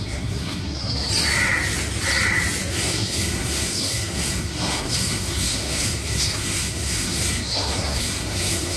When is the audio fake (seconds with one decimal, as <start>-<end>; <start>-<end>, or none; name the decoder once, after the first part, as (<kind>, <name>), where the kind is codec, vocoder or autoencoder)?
0.0-1.1 (codec, SNAC); 2.7-8.8